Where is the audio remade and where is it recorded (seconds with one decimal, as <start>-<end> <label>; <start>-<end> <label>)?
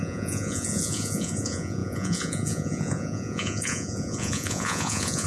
0.0-5.3 remade